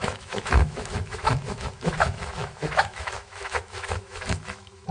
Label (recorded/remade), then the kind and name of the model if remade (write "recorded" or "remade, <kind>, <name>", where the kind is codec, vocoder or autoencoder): remade, autoencoder, DAC-VAE